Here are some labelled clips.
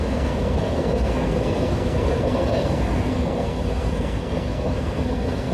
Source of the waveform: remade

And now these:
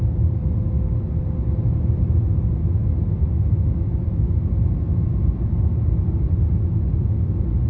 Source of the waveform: recorded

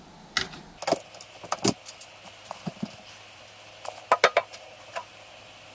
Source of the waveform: recorded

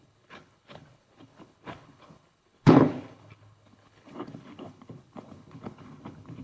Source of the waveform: remade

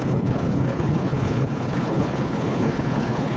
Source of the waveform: remade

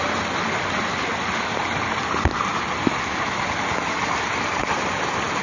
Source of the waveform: recorded